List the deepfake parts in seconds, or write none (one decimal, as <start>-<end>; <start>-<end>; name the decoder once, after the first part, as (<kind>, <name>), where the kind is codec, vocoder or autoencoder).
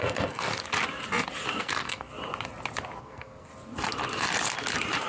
0.0-0.5 (codec, SNAC); 1.6-2.1; 3.0-3.5